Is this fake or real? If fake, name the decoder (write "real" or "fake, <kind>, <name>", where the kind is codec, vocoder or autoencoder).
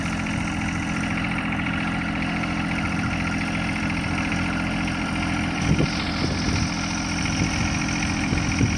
real